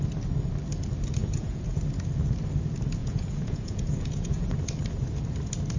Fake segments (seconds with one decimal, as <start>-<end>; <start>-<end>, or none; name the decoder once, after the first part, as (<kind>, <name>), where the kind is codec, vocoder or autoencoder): 1.2-1.8 (vocoder, Vocos); 3.0-4.5